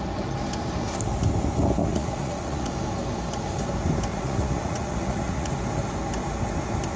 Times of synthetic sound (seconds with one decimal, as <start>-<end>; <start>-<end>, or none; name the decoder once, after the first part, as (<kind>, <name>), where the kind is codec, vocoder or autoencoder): 1.8-2.7 (vocoder, Vocos); 4.1-5.5